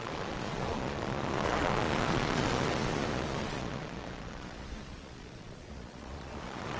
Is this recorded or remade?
remade